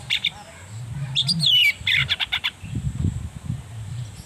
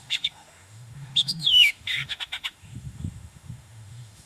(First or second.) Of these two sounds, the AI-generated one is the second